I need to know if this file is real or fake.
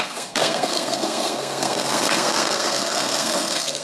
fake